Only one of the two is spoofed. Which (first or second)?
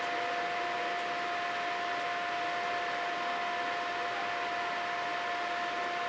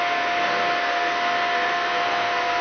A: second